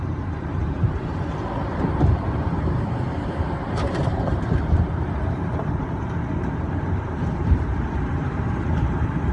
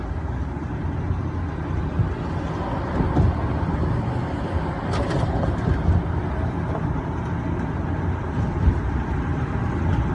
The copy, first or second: first